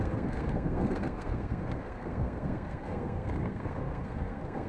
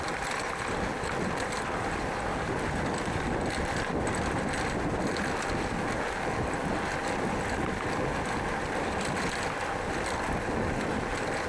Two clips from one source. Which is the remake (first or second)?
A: first